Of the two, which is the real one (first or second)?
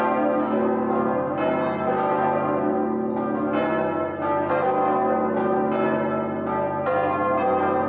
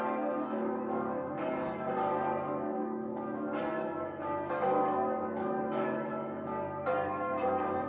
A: first